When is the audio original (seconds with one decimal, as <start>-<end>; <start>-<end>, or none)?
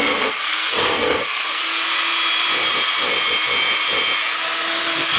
1.6-4.7